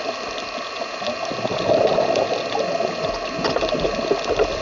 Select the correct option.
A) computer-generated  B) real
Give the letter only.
B